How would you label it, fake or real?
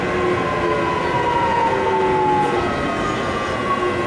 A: real